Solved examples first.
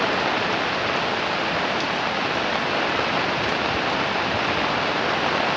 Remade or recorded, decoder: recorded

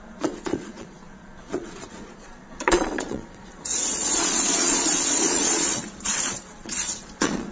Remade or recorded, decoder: remade, vocoder, Vocos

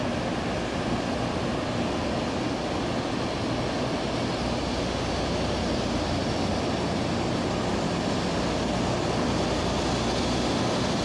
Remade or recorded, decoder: recorded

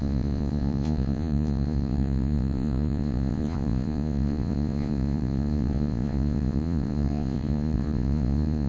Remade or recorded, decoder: remade, vocoder, Vocos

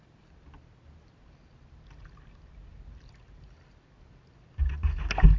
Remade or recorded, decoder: recorded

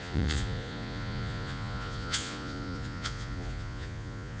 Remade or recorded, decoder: remade, vocoder, Vocos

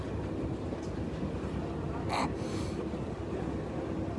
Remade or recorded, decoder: recorded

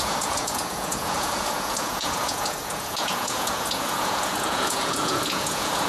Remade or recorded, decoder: remade, vocoder, Vocos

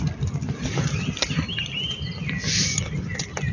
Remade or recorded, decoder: recorded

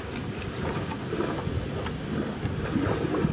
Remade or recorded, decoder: recorded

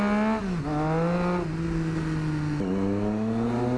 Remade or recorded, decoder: recorded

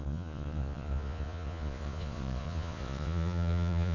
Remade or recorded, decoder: remade, vocoder, Vocos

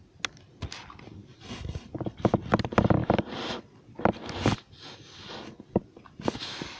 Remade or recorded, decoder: recorded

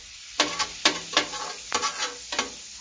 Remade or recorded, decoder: recorded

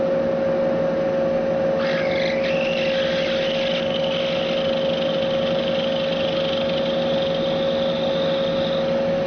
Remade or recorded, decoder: recorded